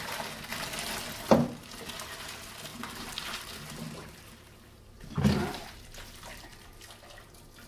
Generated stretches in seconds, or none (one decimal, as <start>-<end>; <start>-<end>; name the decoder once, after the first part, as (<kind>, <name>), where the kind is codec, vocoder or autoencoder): 2.7-6.8 (vocoder, BigVGAN v2)